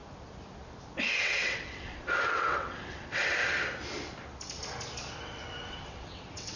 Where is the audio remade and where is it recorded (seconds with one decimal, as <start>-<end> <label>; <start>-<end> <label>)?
0.0-1.2 recorded; 1.2-3.4 remade; 3.4-5.2 recorded; 5.2-6.6 remade